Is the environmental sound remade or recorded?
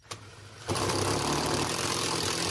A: recorded